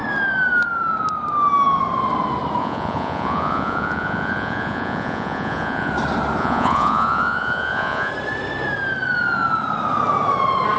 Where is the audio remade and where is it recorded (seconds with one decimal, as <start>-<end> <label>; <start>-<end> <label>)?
0.0-2.6 recorded; 2.6-5.9 remade; 5.9-6.4 recorded; 6.4-8.1 remade; 8.1-10.8 recorded